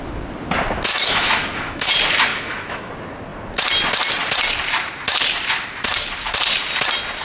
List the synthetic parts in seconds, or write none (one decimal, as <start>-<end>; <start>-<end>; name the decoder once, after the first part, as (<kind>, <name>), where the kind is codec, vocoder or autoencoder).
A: 0.9-1.9 (autoencoder, DAC-VAE); 2.3-2.9